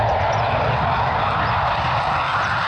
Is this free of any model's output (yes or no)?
yes